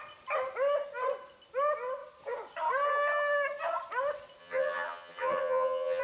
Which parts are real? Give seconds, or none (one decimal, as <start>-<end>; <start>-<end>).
0.0-4.4

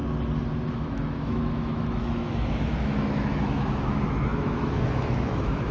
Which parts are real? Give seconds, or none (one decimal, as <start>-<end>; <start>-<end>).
0.0-0.7